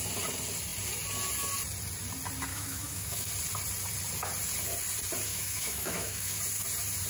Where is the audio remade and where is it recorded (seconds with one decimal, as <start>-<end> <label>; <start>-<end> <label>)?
0.0-2.5 recorded; 2.5-3.3 remade; 3.3-5.3 recorded; 5.3-6.4 remade; 6.4-7.1 recorded